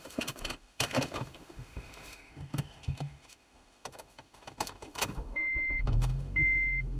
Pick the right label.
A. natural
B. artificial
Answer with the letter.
B